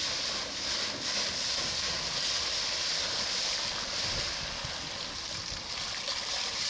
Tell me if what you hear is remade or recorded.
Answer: recorded